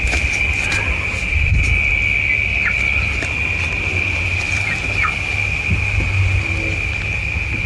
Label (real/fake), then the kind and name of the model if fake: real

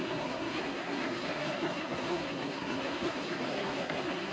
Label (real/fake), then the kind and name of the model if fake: fake, codec, SNAC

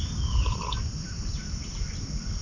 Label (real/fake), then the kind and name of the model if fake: real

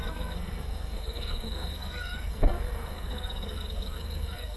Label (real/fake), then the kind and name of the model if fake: fake, codec, SNAC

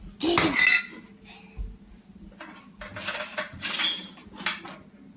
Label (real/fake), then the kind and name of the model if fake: real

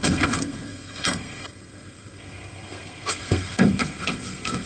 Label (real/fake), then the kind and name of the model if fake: fake, codec, SNAC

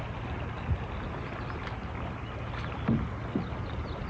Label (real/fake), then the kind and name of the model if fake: real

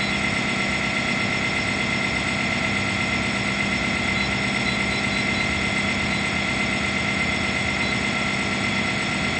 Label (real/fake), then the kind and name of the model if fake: real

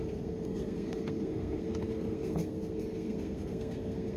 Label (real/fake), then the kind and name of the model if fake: fake, codec, SNAC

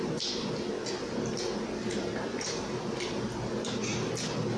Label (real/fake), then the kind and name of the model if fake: real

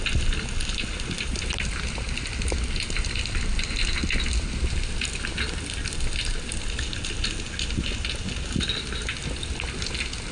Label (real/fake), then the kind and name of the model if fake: real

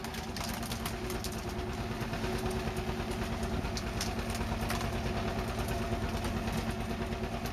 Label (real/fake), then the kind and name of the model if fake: real